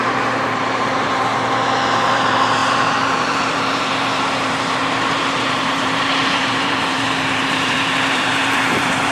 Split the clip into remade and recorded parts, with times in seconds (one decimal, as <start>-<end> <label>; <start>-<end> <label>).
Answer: 0.0-1.3 remade; 1.3-2.1 recorded; 2.1-9.1 remade